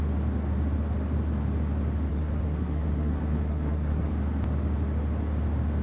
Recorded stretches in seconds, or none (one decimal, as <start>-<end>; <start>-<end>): 0.0-2.1; 4.1-5.8